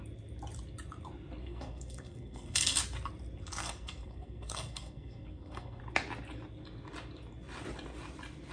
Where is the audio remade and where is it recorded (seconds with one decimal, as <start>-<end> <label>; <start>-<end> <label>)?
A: 0.0-1.4 recorded; 1.4-2.8 remade; 2.8-3.6 recorded; 3.6-5.8 remade; 5.8-8.5 recorded